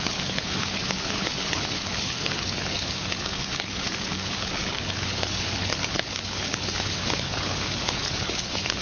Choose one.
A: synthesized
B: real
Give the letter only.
A